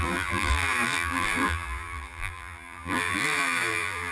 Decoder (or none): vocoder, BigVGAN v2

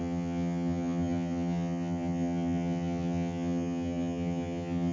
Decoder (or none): vocoder, HiFi-GAN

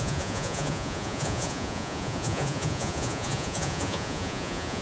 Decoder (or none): vocoder, Vocos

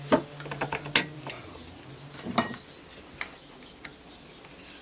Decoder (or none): none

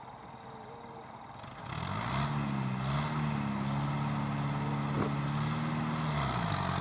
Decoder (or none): none